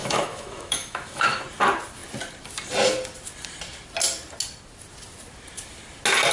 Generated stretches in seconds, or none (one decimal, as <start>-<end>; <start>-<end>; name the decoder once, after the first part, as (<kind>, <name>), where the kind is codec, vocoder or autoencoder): 0.0-1.4 (autoencoder, DAC-VAE)